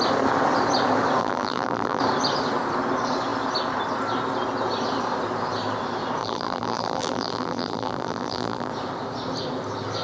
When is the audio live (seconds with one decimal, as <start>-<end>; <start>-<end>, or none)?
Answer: 0.0-1.2; 2.0-6.2; 8.7-10.0